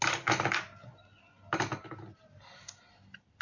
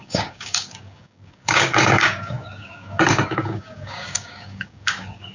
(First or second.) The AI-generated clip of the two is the second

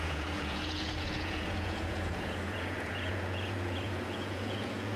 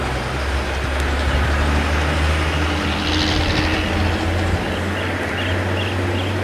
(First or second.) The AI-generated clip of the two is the first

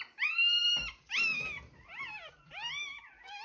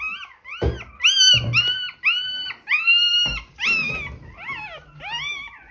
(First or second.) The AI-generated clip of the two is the first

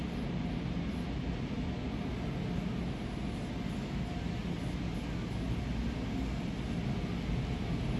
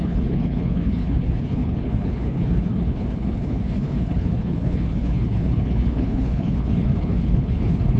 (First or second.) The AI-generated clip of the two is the second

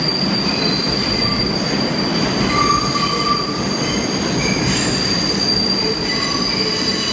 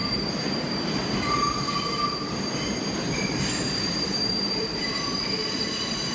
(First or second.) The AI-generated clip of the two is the second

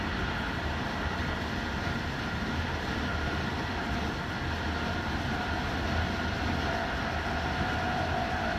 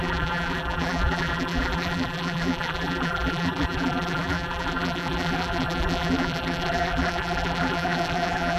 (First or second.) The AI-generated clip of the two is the second